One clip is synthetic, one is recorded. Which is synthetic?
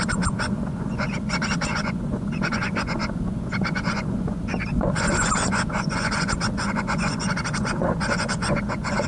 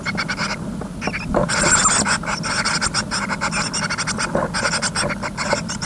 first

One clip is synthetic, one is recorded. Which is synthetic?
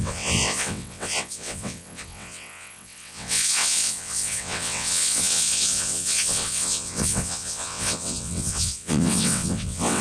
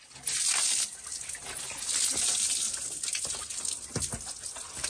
first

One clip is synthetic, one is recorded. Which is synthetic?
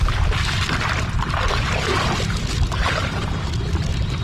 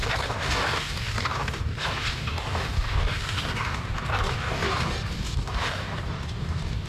second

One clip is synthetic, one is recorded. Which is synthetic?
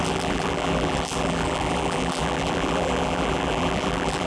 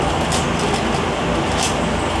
first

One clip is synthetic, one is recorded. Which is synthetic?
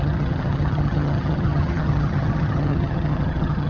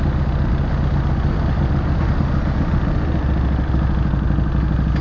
first